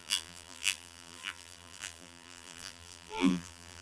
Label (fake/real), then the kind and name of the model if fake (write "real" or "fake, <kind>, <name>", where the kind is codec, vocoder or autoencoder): fake, vocoder, BigVGAN v2